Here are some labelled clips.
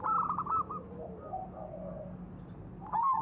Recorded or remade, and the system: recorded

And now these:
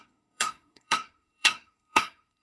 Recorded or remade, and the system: remade, codec, SNAC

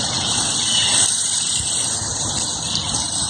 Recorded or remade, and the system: remade, vocoder, BigVGAN v2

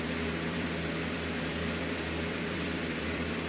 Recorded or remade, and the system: remade, vocoder, BigVGAN v2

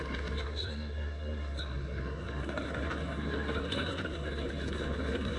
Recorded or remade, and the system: remade, codec, SNAC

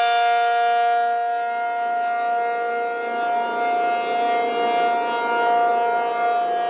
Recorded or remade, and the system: recorded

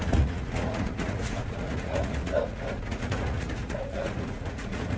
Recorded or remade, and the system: remade, vocoder, Vocos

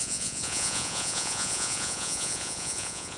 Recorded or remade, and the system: remade, vocoder, Vocos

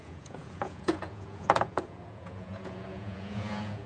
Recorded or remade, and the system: remade, vocoder, Vocos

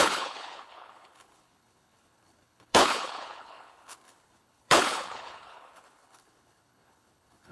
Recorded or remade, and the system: remade, codec, HILCodec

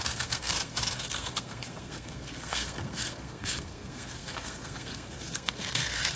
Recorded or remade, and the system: remade, codec, SNAC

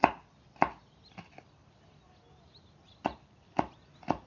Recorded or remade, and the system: recorded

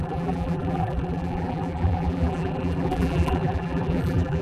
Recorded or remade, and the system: remade, vocoder, BigVGAN v2